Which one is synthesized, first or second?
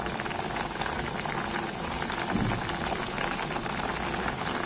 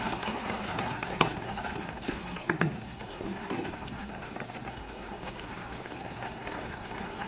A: second